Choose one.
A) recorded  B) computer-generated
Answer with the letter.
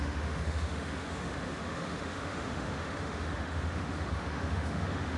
B